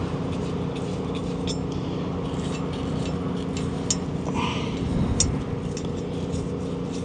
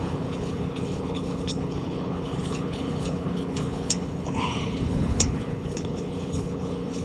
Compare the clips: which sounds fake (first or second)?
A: second